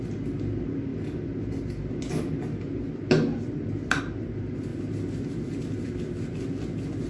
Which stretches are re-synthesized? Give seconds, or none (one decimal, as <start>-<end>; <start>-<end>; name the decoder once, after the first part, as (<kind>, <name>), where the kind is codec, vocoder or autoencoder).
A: none